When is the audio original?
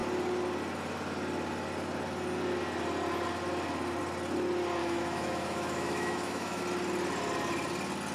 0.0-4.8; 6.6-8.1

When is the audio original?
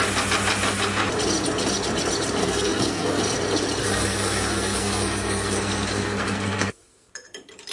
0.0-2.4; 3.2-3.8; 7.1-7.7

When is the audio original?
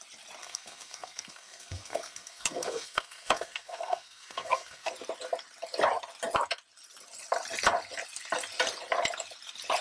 0.0-0.4; 4.9-9.8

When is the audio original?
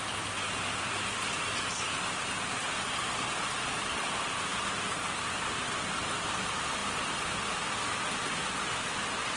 0.0-9.4